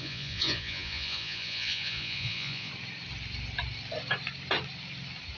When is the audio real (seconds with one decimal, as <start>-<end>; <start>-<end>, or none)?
2.7-5.4